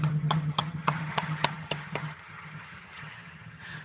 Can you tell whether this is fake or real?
fake